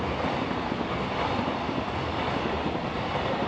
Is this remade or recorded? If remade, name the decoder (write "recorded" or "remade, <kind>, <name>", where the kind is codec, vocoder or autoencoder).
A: recorded